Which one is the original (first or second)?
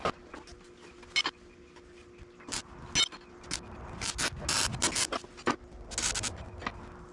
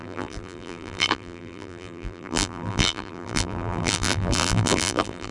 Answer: first